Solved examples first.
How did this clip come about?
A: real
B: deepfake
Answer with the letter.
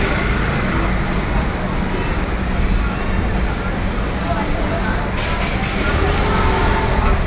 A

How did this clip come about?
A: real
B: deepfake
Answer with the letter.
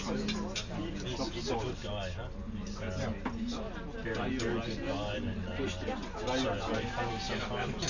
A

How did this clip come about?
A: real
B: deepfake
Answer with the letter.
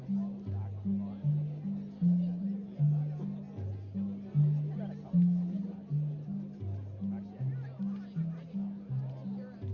A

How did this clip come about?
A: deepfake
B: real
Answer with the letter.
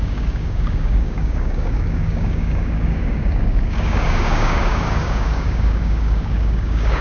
A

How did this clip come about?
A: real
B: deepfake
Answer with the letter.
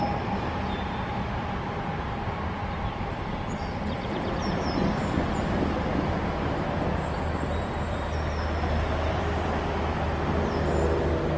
A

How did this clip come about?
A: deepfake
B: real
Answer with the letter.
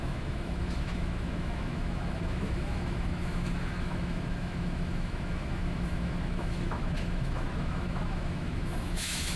A